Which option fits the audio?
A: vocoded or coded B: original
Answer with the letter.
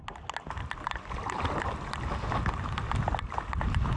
B